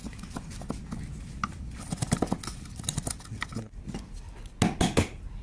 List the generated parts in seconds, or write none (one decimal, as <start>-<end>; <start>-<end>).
none

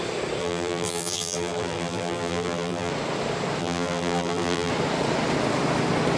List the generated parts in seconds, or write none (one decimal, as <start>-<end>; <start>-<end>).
0.4-2.9; 3.6-4.7

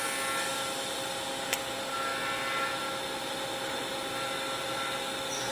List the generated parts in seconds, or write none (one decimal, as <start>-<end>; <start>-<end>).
none

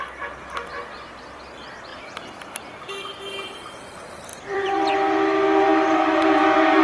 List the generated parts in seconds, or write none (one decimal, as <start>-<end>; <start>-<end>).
1.9-2.9; 4.3-4.9